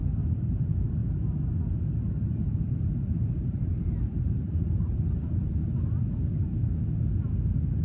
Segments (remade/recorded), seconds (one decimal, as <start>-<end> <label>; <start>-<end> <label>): 0.0-0.6 recorded; 0.6-1.0 remade; 1.0-2.9 recorded; 2.9-5.6 remade; 5.6-7.8 recorded